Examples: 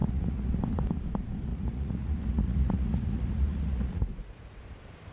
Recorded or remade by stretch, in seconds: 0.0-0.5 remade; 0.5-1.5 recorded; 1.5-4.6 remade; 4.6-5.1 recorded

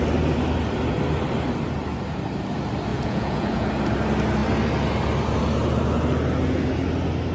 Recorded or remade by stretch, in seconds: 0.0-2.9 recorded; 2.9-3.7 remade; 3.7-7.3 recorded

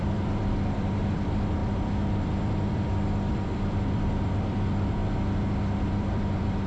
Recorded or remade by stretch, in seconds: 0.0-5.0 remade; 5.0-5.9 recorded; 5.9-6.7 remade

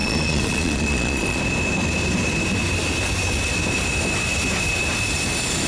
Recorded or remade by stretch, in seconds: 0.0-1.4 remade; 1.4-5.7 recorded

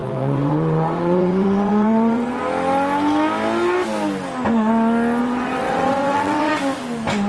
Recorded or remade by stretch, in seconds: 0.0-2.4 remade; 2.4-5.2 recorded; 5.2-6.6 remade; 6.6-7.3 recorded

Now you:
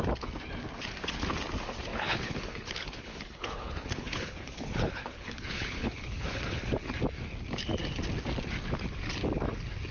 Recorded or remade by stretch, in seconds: 0.0-1.9 recorded; 1.9-6.6 remade; 6.6-9.9 recorded

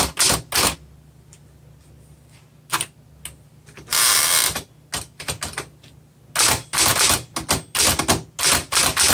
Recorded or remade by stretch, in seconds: 0.0-9.1 recorded

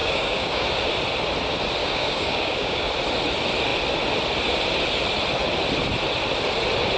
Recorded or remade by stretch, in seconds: 0.0-0.7 remade; 0.7-1.8 recorded; 1.8-2.9 remade; 2.9-7.0 recorded